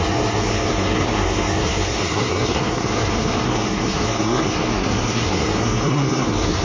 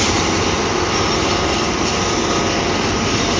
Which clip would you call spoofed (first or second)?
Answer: first